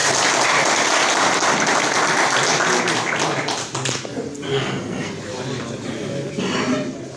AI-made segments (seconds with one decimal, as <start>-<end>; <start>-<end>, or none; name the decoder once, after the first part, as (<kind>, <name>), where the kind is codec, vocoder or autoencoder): 4.5-5.1 (codec, SNAC)